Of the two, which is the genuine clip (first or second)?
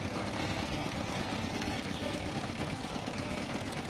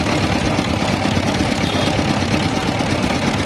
second